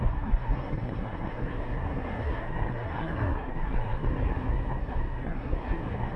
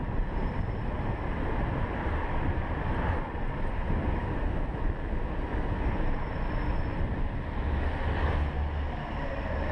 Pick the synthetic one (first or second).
first